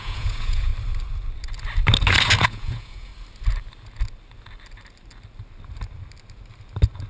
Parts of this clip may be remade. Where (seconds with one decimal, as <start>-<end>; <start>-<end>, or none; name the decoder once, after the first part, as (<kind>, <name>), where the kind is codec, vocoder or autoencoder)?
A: 0.0-0.7 (vocoder, Vocos); 2.4-3.1